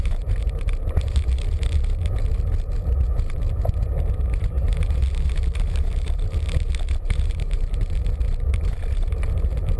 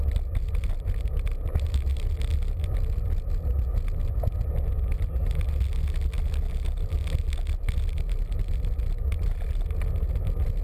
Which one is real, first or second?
second